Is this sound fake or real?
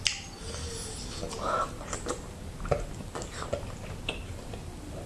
real